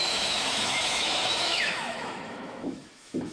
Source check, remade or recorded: remade